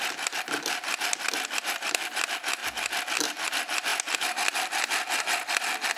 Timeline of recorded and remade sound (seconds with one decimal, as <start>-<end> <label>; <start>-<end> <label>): 0.0-6.0 recorded